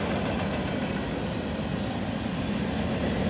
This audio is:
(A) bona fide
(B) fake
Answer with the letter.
A